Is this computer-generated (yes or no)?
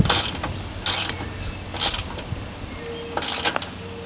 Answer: no